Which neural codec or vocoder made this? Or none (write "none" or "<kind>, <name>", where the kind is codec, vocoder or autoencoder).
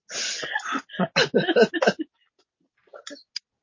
none